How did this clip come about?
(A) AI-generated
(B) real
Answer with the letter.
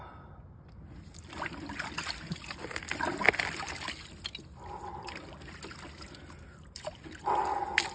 B